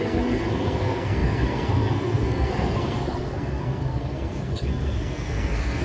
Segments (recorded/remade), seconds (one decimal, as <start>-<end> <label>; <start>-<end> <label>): 0.0-5.8 remade